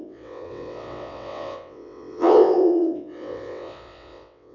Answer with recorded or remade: remade